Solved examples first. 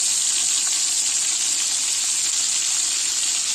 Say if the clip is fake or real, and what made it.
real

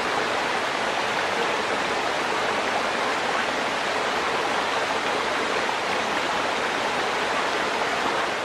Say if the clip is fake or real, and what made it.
real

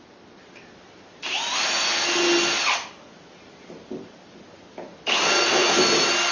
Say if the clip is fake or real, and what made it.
real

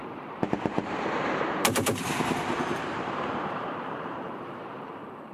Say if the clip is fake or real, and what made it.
fake, vocoder, BigVGAN v2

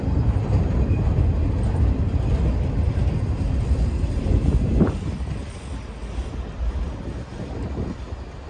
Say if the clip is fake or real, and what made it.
real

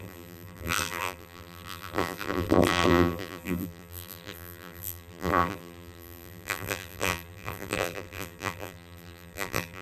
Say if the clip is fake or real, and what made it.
fake, vocoder, BigVGAN v2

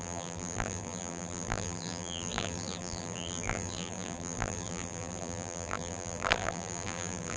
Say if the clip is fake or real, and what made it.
fake, vocoder, BigVGAN v2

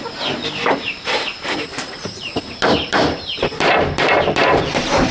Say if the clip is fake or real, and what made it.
fake, vocoder, BigVGAN v2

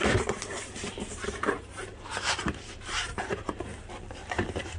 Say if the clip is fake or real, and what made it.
fake, vocoder, BigVGAN v2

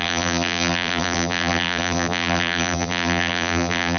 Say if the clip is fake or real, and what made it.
fake, vocoder, BigVGAN v2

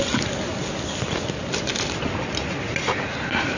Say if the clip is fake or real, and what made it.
real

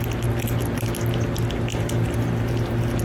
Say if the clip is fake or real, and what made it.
real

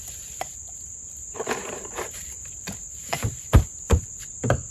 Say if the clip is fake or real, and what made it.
fake, vocoder, BigVGAN v2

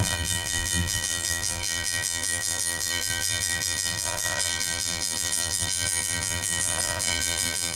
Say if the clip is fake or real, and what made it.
fake, vocoder, BigVGAN v2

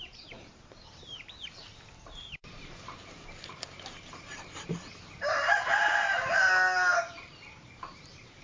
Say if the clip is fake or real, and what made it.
fake, vocoder, BigVGAN v2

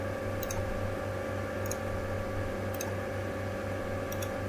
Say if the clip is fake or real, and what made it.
real